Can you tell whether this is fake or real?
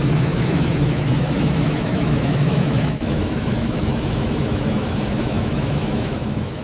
fake